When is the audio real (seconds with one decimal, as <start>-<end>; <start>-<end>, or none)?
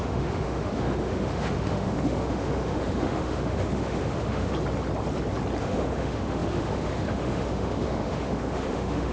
4.5-5.6